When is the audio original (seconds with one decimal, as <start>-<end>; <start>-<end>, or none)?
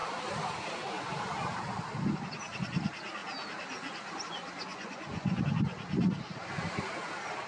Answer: 0.0-4.7; 5.4-7.5